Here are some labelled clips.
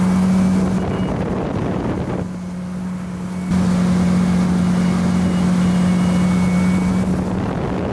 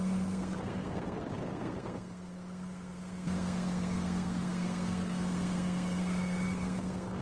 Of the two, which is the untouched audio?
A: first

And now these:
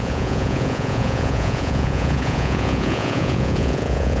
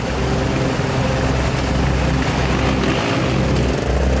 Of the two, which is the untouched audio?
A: second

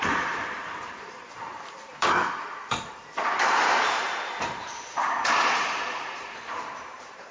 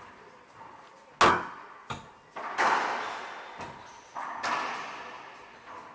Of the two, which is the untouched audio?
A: second